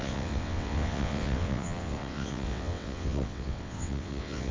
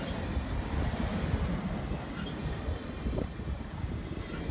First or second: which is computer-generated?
first